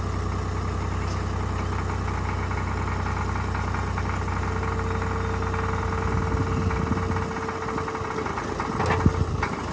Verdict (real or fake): real